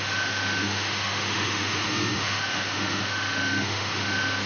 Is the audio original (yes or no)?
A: no